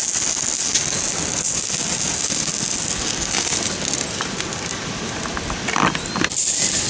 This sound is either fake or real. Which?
real